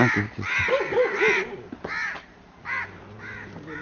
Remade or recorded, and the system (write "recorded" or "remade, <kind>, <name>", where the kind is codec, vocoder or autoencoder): recorded